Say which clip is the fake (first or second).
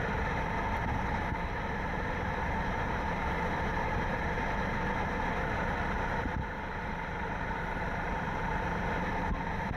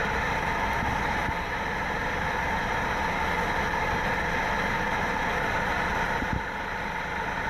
first